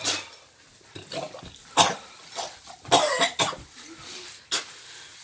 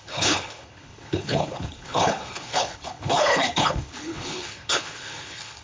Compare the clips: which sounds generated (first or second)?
second